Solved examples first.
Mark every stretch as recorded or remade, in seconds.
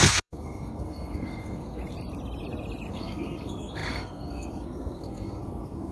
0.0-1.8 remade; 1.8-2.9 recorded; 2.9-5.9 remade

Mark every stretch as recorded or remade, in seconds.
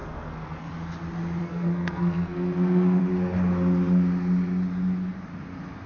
0.0-0.7 remade; 0.7-1.4 recorded; 1.4-3.0 remade; 3.0-5.9 recorded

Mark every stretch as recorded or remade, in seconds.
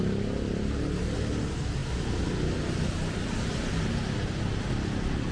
0.0-5.3 recorded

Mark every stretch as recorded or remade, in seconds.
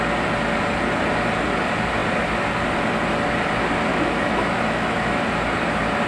0.0-3.9 recorded; 3.9-5.2 remade; 5.2-6.1 recorded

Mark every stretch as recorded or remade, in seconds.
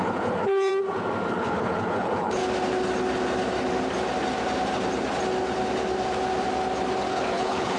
0.0-0.7 remade; 0.7-1.3 recorded; 1.3-2.4 remade; 2.4-7.1 recorded; 7.1-7.8 remade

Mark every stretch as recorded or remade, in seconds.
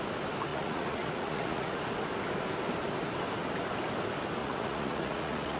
0.0-0.5 recorded; 0.5-1.8 remade; 1.8-4.4 recorded; 4.4-5.6 remade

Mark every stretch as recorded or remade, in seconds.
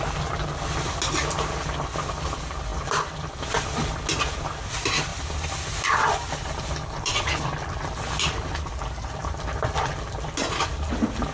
0.0-2.7 recorded; 2.7-3.4 remade; 3.4-5.1 recorded; 5.1-10.1 remade; 10.1-11.3 recorded